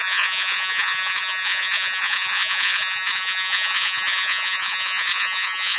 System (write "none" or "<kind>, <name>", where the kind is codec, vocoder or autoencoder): vocoder, Vocos